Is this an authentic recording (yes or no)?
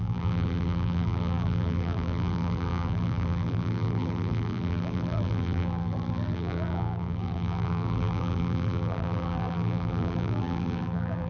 no